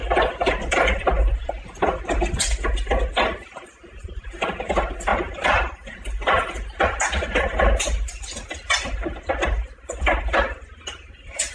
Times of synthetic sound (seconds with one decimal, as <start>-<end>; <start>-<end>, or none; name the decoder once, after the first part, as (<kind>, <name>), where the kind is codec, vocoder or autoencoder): 0.0-1.6 (vocoder, BigVGAN v2)